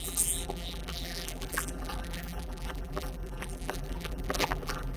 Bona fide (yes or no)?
no